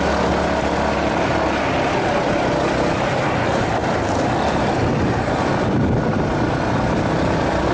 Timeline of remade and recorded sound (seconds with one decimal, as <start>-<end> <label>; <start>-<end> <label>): 0.0-7.7 recorded